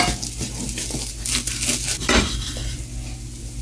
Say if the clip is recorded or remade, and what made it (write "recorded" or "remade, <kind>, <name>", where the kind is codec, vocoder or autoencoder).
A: recorded